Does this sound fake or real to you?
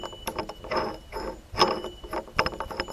real